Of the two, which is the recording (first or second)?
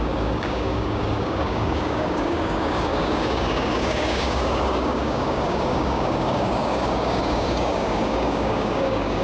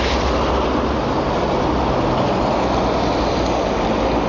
second